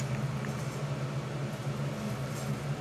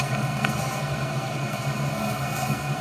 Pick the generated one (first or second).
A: second